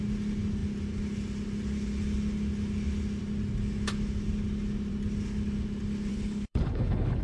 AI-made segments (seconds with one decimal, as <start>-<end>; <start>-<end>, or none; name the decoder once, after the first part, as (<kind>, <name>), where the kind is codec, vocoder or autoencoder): 6.1-7.2 (codec, HILCodec)